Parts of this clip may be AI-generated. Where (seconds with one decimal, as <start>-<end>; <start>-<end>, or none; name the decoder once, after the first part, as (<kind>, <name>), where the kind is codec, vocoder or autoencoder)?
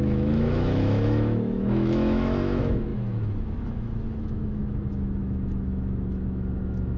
0.0-7.0 (autoencoder, DAC-VAE)